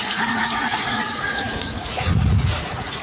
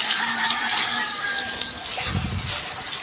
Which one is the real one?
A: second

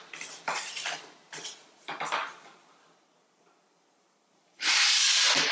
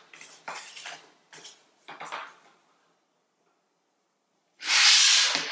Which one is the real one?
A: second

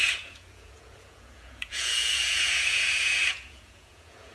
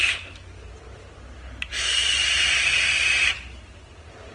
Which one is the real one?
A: second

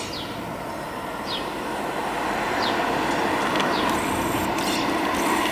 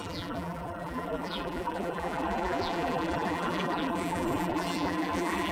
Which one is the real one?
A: first